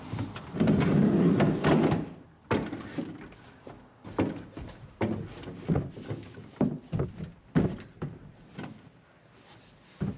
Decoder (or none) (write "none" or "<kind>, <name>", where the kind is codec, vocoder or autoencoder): none